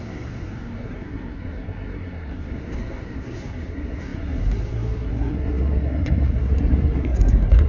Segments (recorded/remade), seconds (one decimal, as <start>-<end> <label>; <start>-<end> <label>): 0.0-7.7 remade